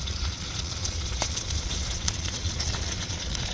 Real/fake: fake